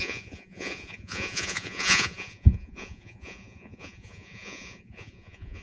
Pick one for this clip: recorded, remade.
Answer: remade